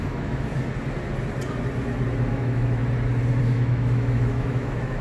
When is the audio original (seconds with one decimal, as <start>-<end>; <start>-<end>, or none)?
0.5-2.3; 2.8-3.4